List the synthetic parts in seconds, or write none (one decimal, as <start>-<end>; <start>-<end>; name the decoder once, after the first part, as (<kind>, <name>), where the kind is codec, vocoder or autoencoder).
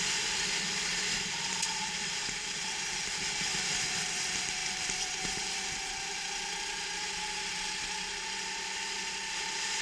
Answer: 0.0-9.8 (vocoder, BigVGAN v2)